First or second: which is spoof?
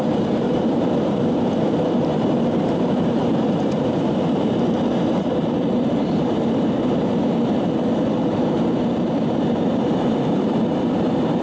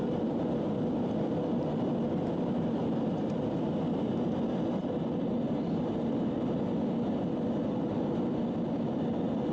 first